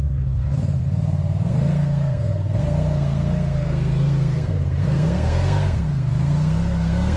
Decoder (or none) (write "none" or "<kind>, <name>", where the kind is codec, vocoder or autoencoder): codec, SNAC